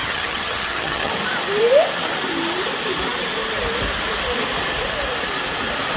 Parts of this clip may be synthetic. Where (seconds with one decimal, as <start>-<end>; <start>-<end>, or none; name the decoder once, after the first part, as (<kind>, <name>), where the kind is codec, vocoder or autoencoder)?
0.0-1.1 (vocoder, HiFi-GAN)